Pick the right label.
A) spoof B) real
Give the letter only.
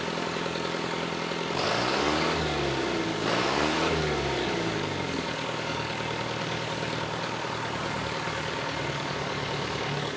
A